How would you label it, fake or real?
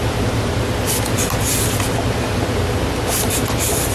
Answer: real